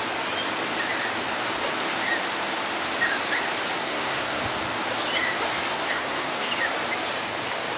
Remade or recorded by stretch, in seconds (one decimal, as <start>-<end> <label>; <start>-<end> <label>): 0.0-3.8 recorded; 3.8-4.4 remade; 4.4-5.7 recorded; 5.7-6.5 remade; 6.5-7.8 recorded